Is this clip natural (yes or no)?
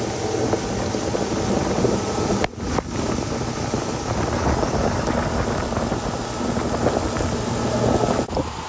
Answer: yes